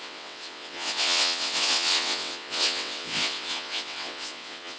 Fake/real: fake